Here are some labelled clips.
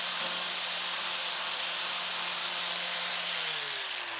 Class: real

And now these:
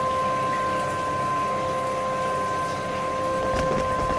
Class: real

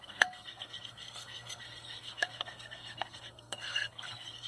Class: fake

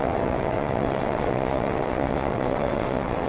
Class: fake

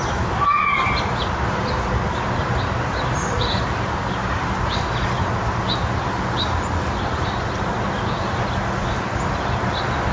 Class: real